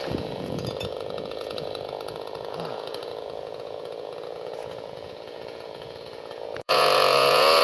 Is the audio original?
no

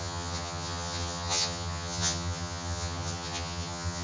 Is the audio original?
no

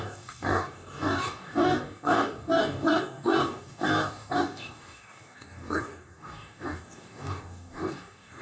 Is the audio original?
no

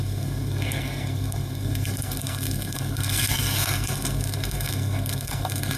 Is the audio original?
no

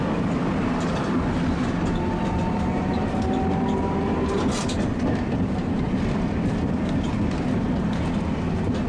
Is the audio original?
yes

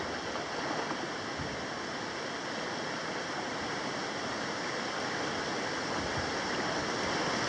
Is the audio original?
yes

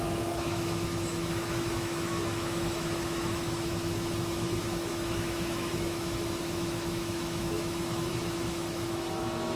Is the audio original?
no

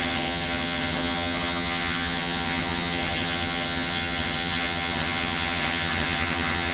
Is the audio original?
no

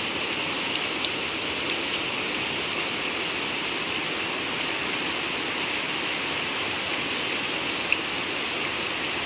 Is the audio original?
yes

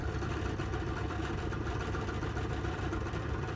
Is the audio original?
no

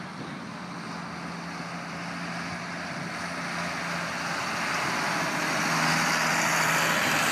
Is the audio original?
yes